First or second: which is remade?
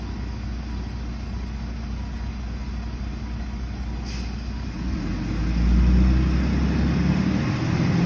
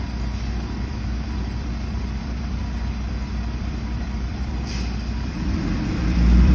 second